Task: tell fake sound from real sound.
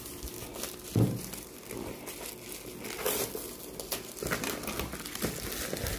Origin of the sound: real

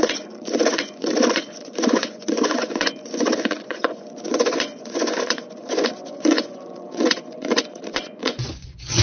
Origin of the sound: fake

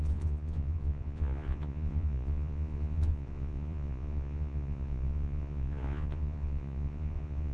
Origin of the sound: fake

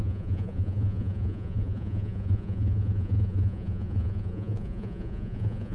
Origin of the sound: fake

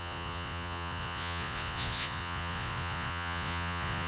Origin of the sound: fake